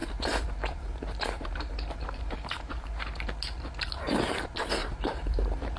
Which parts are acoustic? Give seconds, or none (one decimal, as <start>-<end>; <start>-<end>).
3.2-4.8